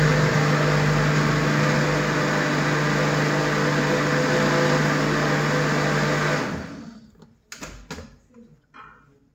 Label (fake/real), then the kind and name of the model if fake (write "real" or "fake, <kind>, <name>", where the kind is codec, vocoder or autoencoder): real